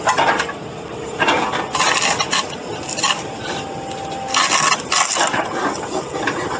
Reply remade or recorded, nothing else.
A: recorded